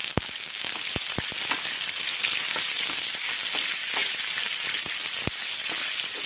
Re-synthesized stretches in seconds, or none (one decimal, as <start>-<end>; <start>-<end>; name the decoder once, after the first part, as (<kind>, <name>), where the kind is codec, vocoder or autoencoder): 0.0-0.9 (codec, DAC); 2.5-3.5